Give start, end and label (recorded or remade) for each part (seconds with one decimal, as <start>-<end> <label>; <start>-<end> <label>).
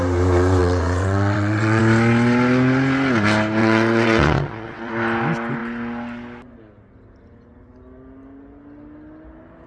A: 0.0-0.6 recorded; 0.6-1.8 remade; 1.8-3.6 recorded; 3.6-4.9 remade; 4.9-9.7 recorded